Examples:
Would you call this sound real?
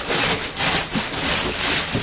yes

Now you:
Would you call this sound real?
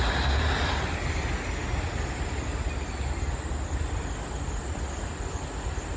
yes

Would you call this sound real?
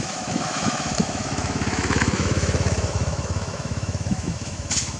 no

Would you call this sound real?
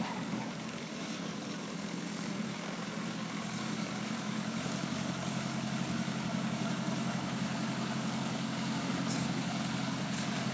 no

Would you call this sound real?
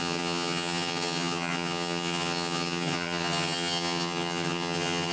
no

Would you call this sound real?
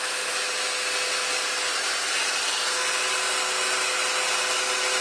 yes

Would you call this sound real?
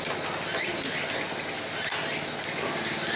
yes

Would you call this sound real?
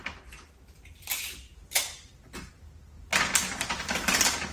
yes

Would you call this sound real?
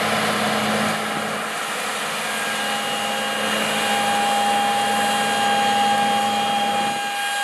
yes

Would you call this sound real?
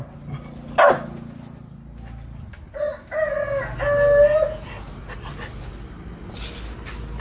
yes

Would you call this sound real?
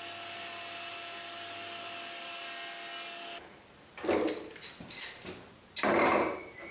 yes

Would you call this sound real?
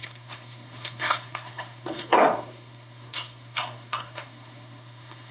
no